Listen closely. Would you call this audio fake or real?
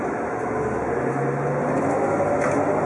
real